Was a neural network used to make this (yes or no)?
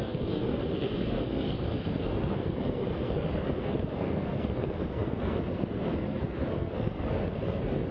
yes